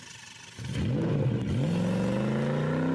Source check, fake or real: real